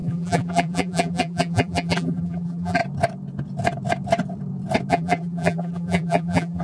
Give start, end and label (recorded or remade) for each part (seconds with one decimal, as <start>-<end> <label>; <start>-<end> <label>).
0.0-2.8 remade; 2.8-4.9 recorded; 4.9-6.6 remade